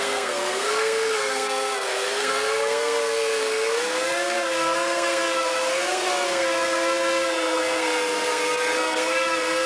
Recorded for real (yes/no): no